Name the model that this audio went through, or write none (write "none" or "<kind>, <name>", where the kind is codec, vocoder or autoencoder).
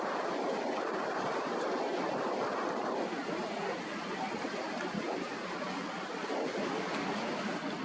none